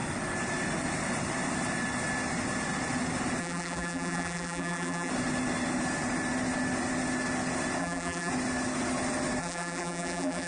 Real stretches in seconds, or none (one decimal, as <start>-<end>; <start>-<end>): 0.0-3.4; 5.1-7.8; 8.3-9.4